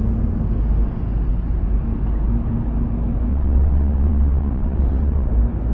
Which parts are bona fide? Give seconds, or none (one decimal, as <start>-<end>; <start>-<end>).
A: 0.0-3.3; 5.3-5.7